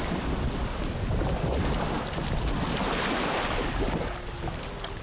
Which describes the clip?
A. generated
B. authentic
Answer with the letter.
B